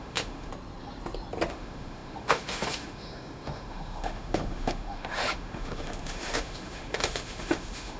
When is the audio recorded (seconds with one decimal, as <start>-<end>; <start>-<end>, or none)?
0.5-1.5